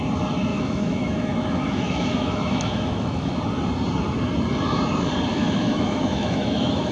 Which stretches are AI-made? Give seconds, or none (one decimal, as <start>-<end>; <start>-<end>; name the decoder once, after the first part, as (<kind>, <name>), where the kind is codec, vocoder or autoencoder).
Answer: 0.5-3.3 (autoencoder, DAC-VAE); 5.3-6.9